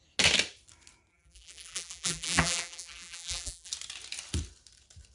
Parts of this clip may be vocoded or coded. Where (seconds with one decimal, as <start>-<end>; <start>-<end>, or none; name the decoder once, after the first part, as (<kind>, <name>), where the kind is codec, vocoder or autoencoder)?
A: 1.1-3.7 (vocoder, BigVGAN v2)

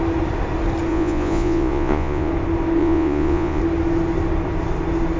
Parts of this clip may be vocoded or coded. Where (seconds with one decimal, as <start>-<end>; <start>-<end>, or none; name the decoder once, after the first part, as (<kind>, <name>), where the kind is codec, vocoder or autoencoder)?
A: 0.9-2.3 (vocoder, Vocos); 2.8-3.6

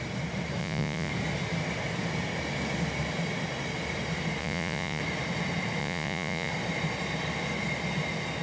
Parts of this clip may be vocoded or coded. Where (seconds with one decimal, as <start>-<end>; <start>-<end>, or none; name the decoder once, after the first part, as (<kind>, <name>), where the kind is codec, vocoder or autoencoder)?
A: 0.6-1.1 (vocoder, Vocos); 4.4-5.0; 5.8-6.5

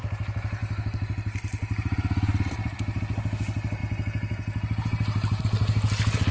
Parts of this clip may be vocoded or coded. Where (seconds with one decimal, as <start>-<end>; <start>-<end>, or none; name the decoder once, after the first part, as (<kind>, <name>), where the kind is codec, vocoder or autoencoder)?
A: none

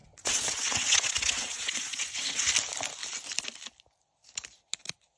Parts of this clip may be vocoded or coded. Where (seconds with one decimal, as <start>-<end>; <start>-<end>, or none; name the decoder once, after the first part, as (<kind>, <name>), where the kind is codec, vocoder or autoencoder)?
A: 0.0-2.5 (vocoder, WaveNeXt)

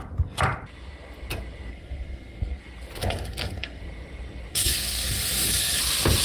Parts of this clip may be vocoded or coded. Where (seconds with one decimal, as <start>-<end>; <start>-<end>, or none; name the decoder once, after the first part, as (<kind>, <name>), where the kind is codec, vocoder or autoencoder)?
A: 1.7-2.6 (codec, SNAC); 3.0-3.8; 4.5-5.8

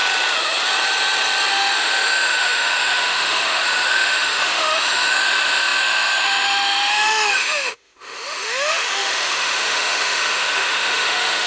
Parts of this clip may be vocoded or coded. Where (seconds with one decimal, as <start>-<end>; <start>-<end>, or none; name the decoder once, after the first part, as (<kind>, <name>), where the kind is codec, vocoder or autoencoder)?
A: 1.5-11.5 (autoencoder, DAC-VAE)